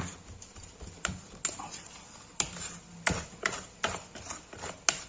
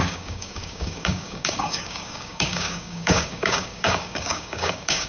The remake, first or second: second